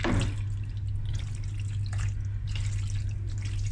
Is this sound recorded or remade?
recorded